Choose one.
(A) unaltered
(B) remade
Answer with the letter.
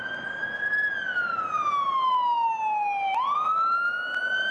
A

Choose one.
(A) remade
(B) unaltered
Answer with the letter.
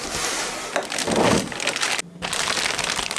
B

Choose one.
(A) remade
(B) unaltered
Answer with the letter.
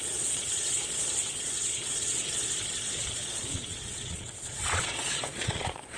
A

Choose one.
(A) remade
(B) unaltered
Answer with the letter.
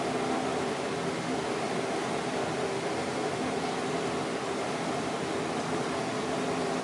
B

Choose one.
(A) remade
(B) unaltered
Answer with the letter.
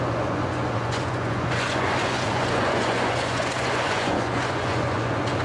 A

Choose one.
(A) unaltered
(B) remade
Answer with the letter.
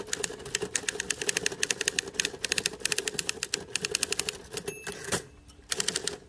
A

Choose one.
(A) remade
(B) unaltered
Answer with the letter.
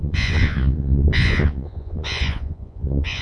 A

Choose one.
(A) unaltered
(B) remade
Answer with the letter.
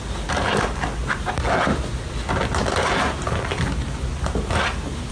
A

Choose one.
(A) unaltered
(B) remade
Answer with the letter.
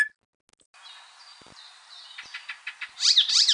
A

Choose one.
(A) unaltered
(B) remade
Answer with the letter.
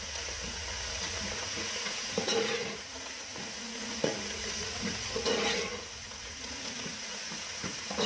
B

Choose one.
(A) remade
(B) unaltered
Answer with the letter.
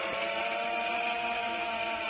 B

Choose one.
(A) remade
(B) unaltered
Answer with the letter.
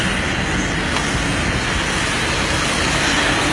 B